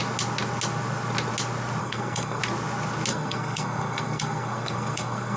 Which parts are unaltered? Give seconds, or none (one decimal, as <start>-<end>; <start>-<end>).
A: 0.0-1.8; 2.4-3.1